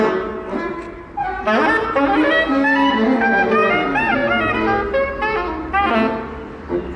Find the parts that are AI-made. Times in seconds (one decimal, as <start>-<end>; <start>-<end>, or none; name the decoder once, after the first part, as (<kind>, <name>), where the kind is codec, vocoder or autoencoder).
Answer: none